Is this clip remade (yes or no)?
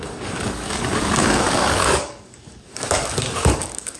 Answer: yes